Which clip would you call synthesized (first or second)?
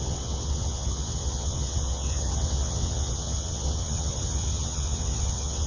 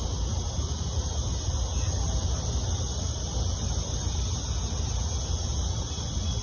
first